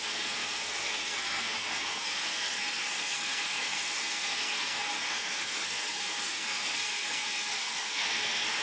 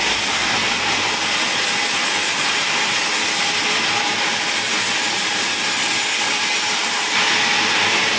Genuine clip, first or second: second